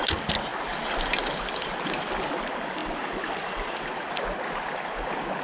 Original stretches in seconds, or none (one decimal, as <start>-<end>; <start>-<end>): 0.0-5.4